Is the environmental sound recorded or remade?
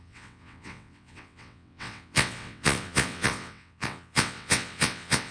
remade